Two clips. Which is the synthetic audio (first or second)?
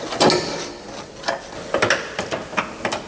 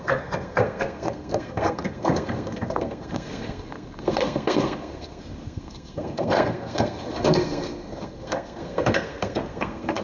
second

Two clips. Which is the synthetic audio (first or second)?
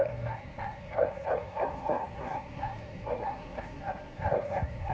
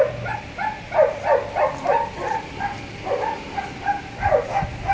first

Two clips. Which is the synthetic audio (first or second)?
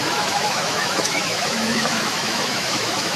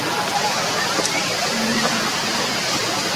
first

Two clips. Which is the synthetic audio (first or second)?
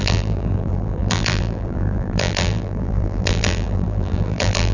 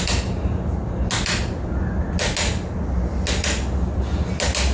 first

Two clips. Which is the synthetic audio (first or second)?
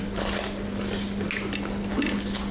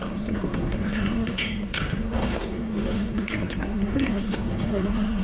second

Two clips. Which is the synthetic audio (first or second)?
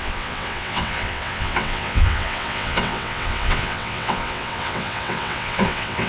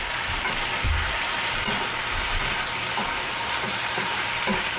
first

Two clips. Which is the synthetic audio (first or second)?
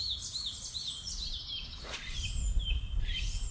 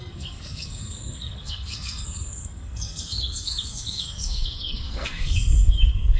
second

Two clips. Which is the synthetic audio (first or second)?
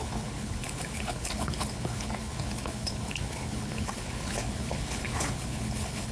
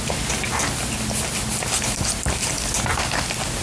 first